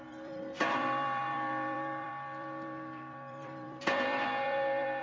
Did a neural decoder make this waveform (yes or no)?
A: yes